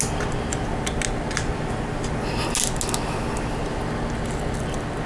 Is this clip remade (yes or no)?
no